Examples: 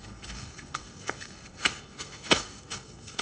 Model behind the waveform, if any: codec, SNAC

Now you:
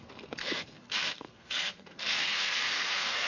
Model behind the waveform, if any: codec, SNAC